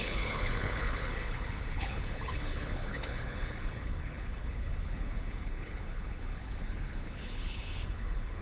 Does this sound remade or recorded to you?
remade